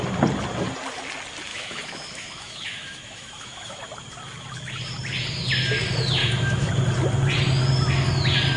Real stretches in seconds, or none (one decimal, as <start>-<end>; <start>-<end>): 0.0-1.5; 3.9-6.2; 6.7-8.6